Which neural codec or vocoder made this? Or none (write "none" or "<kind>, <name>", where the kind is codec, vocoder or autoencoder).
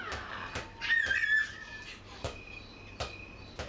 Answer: none